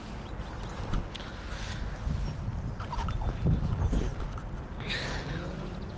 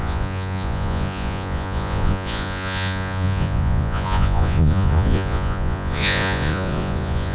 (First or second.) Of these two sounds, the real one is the first